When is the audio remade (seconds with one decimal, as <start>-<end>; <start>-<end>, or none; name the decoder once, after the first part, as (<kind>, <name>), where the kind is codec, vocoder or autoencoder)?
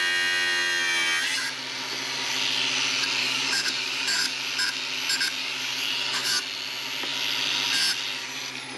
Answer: 3.2-4.4 (codec, DAC); 5.4-6.4